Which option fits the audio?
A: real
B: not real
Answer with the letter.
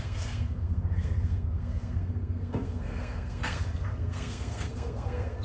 B